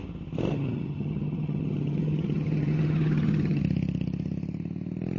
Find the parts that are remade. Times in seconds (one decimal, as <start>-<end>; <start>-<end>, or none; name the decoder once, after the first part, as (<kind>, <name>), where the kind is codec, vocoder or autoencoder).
0.5-3.6 (vocoder, HiFi-GAN)